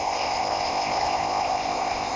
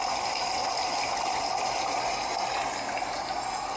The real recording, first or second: second